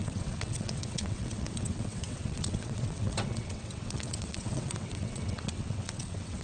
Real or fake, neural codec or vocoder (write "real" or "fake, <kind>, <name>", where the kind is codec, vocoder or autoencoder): fake, vocoder, WaveNeXt